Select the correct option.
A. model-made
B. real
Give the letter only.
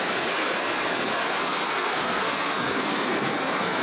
A